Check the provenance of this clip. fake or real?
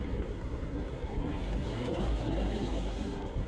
fake